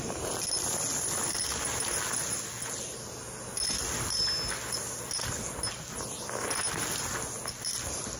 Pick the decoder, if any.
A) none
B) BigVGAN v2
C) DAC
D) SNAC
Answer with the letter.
A